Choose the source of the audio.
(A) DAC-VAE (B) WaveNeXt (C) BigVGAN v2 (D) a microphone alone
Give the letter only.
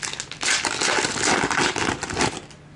D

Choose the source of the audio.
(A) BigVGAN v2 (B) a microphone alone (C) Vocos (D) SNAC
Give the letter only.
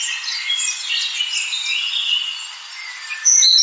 B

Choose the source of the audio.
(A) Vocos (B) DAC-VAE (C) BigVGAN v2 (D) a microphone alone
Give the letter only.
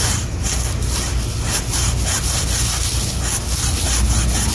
D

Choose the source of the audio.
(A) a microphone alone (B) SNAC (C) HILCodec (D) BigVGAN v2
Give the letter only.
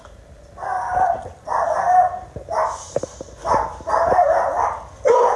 A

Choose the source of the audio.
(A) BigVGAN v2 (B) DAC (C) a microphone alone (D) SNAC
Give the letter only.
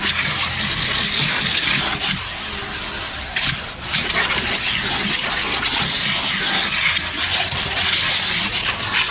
C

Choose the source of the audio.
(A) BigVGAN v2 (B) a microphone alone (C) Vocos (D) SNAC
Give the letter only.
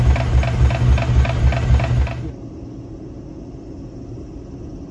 B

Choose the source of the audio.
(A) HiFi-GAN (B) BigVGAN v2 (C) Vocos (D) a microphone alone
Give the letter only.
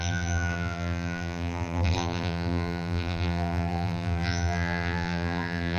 B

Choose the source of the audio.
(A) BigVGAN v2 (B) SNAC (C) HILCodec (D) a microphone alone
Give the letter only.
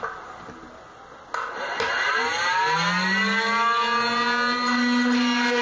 D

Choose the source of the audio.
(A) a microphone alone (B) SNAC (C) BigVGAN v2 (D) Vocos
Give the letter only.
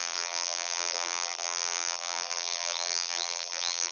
C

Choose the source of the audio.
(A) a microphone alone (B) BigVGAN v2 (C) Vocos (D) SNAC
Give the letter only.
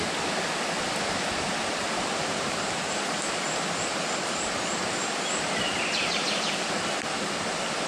A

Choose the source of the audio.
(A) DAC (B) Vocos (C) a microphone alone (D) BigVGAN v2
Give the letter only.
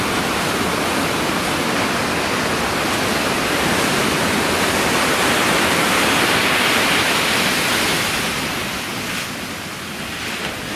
C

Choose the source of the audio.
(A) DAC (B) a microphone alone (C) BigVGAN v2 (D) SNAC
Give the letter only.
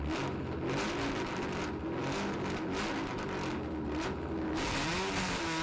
B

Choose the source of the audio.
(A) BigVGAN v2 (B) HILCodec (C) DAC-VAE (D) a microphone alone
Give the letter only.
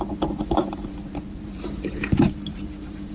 A